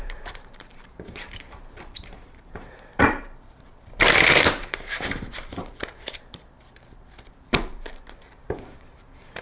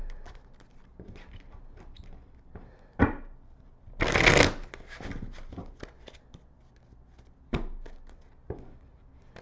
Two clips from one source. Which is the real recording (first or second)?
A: second